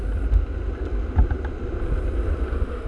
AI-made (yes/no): no